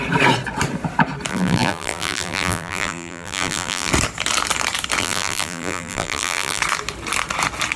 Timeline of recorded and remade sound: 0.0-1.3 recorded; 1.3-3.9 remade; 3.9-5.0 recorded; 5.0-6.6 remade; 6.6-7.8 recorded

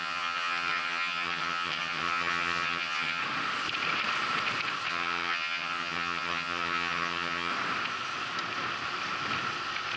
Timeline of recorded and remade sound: 0.0-3.2 remade; 3.2-4.9 recorded; 4.9-7.5 remade; 7.5-10.0 recorded

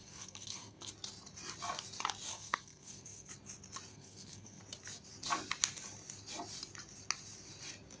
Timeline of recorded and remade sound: 0.0-0.9 remade; 0.9-2.3 recorded; 2.3-3.3 remade; 3.3-3.9 recorded; 3.9-4.6 remade; 4.6-8.0 recorded